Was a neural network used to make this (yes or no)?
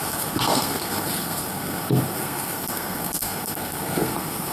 yes